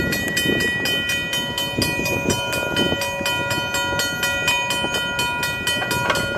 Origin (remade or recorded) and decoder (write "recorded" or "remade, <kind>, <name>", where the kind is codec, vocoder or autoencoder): recorded